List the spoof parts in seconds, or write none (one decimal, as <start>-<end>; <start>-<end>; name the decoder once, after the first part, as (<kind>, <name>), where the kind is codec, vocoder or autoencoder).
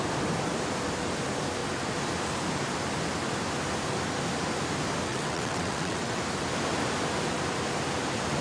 5.1-6.2 (vocoder, WaveNeXt)